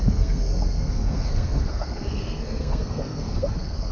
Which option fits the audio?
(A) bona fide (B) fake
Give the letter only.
B